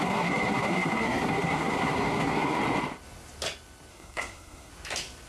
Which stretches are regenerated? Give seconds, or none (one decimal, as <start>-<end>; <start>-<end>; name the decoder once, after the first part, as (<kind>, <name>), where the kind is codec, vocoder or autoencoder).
0.0-2.6 (codec, SNAC); 3.9-4.7